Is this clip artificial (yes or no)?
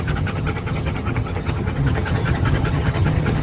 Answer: yes